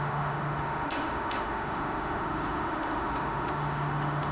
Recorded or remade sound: remade